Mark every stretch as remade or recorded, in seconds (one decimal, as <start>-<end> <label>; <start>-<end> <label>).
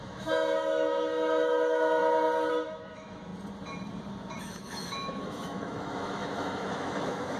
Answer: 0.0-2.0 remade; 2.0-2.5 recorded; 2.5-3.3 remade; 3.3-4.4 recorded; 4.4-7.4 remade